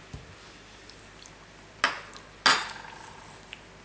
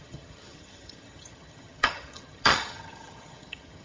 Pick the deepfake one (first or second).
second